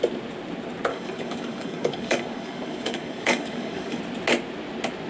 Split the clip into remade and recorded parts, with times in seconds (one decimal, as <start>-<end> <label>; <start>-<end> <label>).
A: 0.0-0.9 recorded; 0.9-4.0 remade; 4.0-5.1 recorded